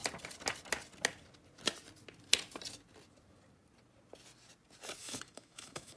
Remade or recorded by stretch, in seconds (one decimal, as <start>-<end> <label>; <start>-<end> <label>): 0.0-5.0 recorded; 5.0-6.0 remade